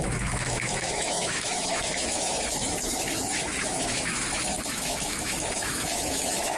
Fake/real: fake